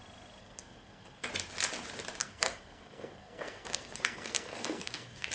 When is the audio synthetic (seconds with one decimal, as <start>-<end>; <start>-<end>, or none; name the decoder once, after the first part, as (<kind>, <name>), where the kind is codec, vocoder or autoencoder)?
0.4-1.3 (codec, SNAC); 2.2-5.3